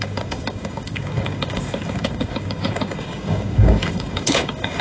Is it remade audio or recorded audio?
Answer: remade